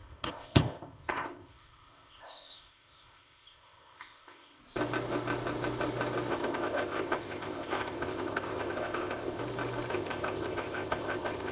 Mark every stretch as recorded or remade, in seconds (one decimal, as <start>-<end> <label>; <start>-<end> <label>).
0.0-4.6 remade; 4.6-6.3 recorded; 6.3-9.4 remade; 9.4-9.9 recorded; 9.9-11.5 remade